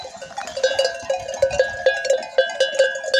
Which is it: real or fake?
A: real